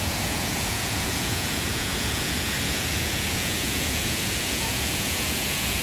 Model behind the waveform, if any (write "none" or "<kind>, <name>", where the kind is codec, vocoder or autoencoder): vocoder, Vocos